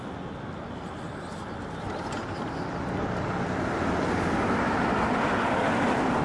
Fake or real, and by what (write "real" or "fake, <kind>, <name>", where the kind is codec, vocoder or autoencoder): real